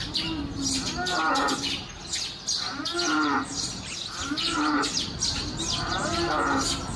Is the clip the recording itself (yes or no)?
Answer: yes